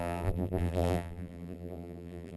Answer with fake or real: fake